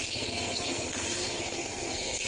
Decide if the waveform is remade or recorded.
remade